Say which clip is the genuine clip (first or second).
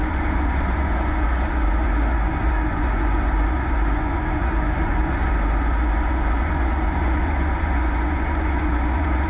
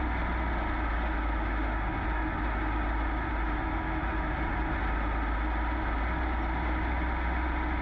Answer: second